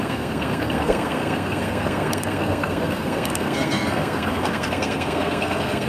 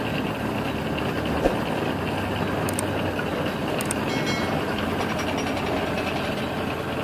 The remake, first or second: first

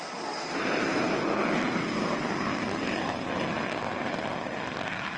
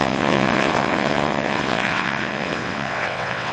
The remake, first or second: second